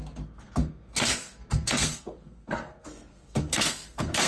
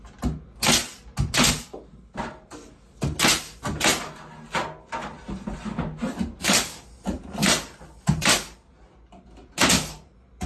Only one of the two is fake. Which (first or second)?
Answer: first